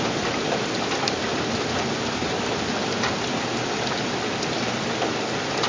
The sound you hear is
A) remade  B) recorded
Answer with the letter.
B